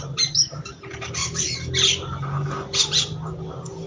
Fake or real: real